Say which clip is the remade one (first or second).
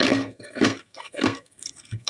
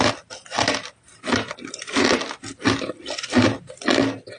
first